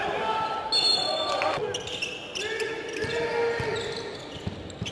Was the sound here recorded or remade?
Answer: recorded